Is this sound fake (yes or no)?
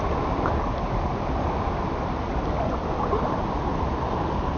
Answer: no